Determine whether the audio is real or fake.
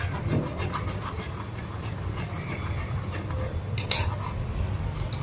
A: real